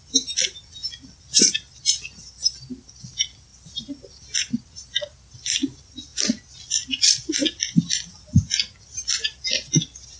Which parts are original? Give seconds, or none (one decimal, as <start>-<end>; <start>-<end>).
none